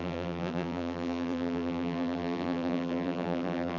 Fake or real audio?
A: fake